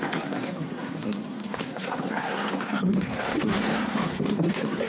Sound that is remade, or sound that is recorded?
remade